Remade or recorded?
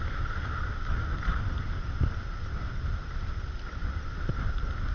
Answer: recorded